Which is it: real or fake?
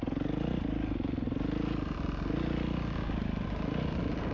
real